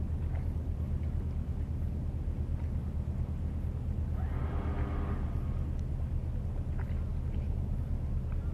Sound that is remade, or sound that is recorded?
recorded